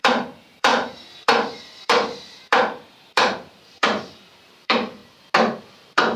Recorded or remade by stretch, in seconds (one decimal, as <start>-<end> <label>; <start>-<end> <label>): 0.0-5.0 remade; 5.0-5.6 recorded; 5.6-6.2 remade